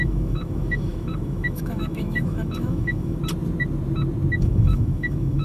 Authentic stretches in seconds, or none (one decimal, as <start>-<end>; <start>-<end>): 3.2-4.4